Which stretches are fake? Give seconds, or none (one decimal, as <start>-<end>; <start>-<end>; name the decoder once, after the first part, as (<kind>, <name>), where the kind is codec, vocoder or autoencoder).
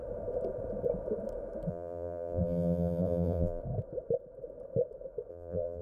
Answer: 1.7-3.6 (vocoder, BigVGAN v2); 5.3-5.8